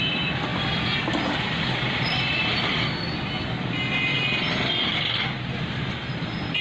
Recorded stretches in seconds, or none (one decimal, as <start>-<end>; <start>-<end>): 0.0-6.6